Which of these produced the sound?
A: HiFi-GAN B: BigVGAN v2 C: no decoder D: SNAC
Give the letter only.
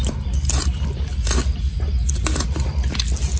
C